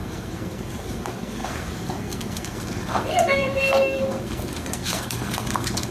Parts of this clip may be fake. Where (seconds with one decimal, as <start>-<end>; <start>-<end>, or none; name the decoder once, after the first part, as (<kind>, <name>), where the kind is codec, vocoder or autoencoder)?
0.0-5.9 (codec, SNAC)